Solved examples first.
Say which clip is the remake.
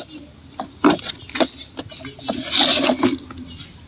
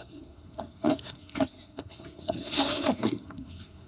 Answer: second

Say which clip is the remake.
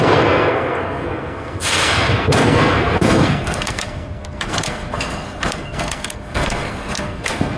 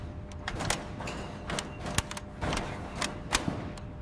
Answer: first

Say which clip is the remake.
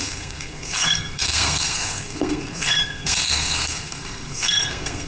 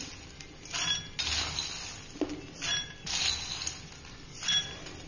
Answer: first